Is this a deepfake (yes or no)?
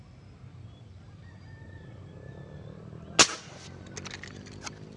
no